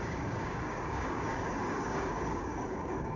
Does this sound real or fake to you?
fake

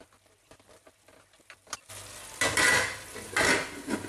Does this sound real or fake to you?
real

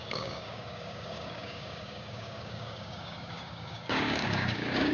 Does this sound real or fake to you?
fake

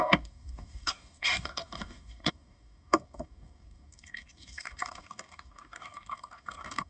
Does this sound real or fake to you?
fake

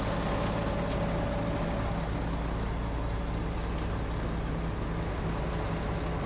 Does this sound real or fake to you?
real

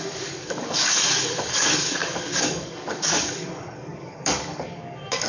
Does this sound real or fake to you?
fake